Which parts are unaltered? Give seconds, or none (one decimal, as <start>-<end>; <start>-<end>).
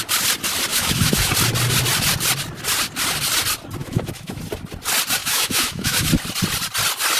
0.0-0.7; 1.3-3.8; 4.4-5.2; 6.1-7.2